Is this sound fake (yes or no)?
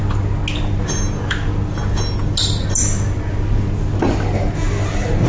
no